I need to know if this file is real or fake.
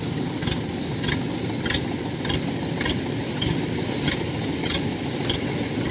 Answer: real